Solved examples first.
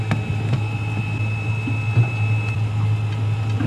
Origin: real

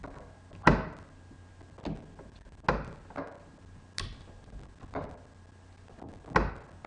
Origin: real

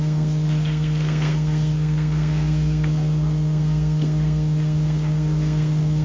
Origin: fake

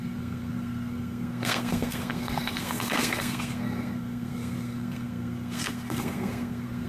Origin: fake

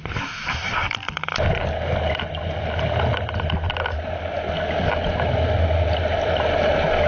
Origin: real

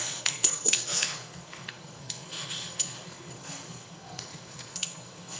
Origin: fake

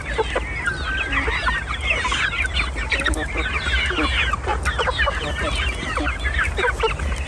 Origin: real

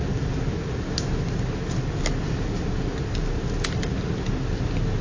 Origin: real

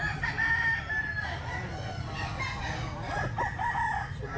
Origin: real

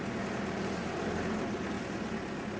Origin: real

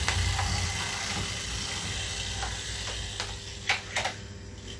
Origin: real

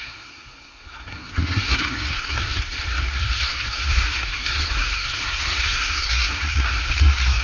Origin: fake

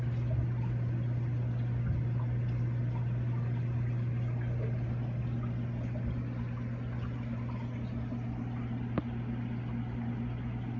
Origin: real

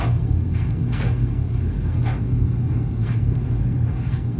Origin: fake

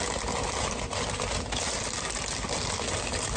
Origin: real